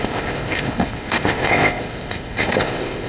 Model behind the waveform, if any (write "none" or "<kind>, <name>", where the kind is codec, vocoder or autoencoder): codec, ZipCodec